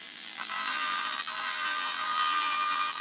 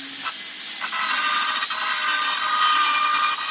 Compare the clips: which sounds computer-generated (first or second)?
first